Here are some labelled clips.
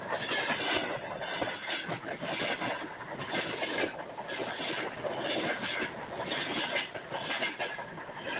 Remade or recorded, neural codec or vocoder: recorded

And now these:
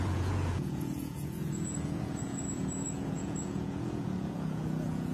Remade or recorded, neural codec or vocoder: remade, vocoder, Vocos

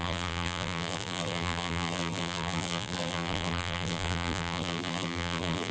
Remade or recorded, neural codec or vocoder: remade, vocoder, BigVGAN v2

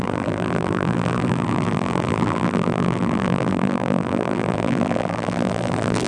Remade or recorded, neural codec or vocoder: remade, vocoder, BigVGAN v2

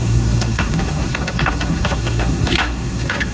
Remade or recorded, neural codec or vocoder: remade, codec, SNAC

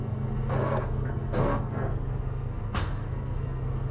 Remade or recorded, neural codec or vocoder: remade, codec, SNAC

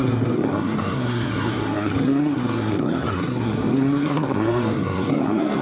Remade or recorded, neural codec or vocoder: remade, codec, SNAC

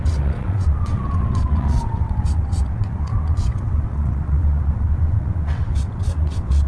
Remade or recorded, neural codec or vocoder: remade, vocoder, WaveNeXt